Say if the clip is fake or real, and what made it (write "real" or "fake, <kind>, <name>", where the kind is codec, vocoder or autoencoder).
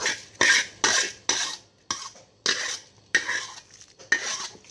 real